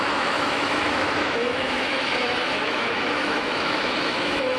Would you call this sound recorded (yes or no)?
no